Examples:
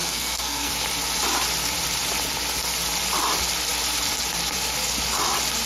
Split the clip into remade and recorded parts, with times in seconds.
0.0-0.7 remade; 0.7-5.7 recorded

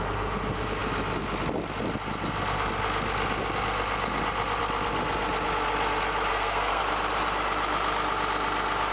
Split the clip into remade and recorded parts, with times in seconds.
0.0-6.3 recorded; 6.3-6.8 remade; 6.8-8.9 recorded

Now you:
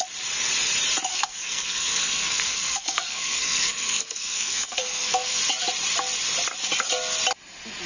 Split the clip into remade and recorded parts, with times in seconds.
0.0-1.1 recorded; 1.1-5.4 remade; 5.4-7.9 recorded

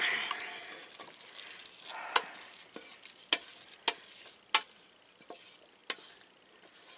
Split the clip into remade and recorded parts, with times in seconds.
0.0-7.0 recorded